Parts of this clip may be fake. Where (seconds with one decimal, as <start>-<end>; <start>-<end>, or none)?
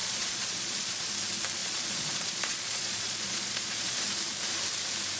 0.0-1.1; 1.6-4.0